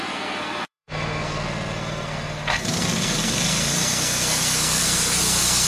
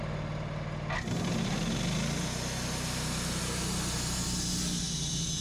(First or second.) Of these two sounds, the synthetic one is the first